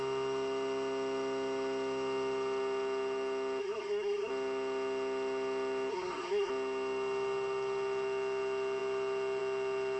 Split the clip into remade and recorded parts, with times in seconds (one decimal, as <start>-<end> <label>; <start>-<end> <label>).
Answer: 0.0-3.6 recorded; 3.6-4.3 remade; 4.3-5.9 recorded; 5.9-6.5 remade; 6.5-10.0 recorded